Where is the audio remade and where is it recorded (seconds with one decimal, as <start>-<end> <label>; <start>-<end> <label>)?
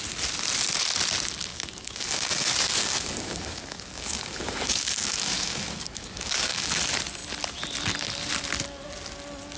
0.0-1.5 recorded; 1.5-6.7 remade; 6.7-9.6 recorded